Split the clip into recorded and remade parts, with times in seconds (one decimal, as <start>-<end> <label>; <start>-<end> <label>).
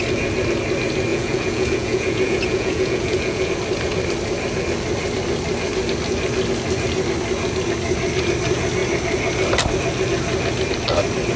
0.0-1.1 recorded; 1.1-3.5 remade; 3.5-11.4 recorded